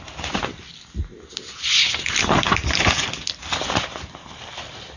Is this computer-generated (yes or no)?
no